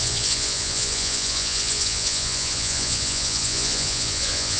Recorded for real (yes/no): no